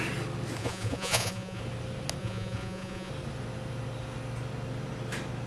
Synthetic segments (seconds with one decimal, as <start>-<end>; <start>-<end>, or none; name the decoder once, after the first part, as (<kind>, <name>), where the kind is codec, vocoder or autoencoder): 0.6-1.6 (vocoder, Vocos); 2.2-3.1